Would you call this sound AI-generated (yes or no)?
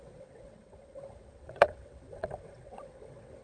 yes